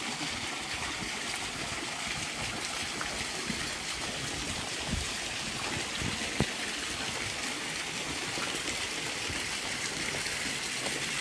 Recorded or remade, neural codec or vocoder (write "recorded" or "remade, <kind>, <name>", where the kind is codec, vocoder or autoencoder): recorded